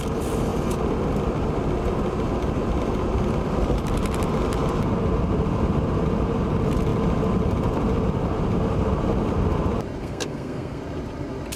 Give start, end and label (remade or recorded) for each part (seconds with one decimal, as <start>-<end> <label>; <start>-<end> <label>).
0.0-10.0 recorded; 10.0-10.8 remade; 10.8-11.6 recorded